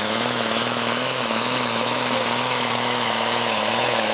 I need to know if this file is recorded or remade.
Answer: remade